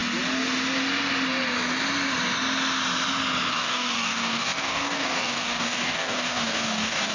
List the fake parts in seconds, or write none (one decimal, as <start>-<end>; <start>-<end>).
3.5-7.1